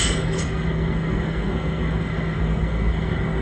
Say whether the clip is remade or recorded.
remade